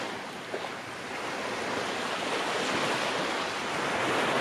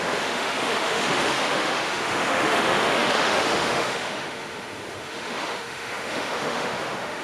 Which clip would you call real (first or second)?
first